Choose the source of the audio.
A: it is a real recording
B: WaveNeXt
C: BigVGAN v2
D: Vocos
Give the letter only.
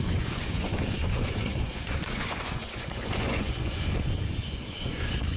D